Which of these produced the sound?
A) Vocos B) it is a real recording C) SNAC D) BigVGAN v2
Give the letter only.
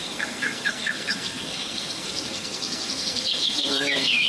C